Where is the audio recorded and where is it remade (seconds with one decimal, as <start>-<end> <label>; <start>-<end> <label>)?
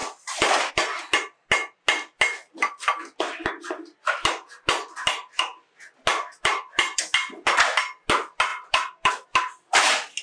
0.0-0.7 remade; 0.7-6.1 recorded; 6.1-7.0 remade; 7.0-8.5 recorded; 8.5-9.1 remade; 9.1-10.2 recorded